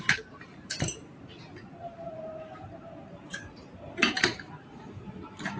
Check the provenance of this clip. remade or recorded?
remade